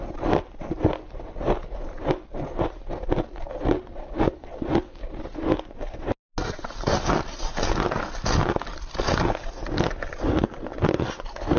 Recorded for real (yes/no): yes